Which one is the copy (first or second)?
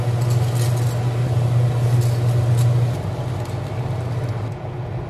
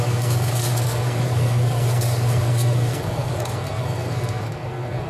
second